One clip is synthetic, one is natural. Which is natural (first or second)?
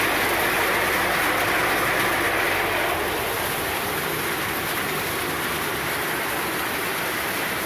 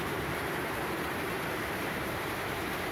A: first